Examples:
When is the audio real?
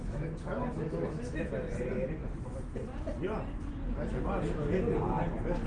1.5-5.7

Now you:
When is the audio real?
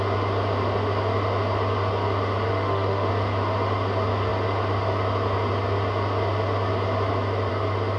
0.0-2.5; 3.1-8.0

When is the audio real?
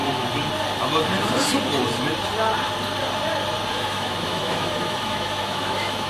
0.0-3.7